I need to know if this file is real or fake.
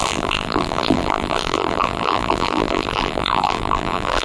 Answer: fake